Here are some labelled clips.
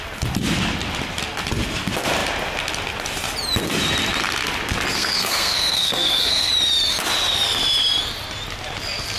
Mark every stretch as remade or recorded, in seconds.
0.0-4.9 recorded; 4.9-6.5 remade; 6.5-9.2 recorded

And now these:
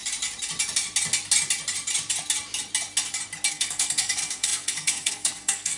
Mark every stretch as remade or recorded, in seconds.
0.0-3.5 recorded; 3.5-5.8 remade